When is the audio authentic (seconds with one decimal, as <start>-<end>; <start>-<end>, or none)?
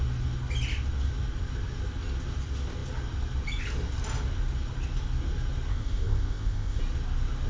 0.0-5.7; 6.8-7.5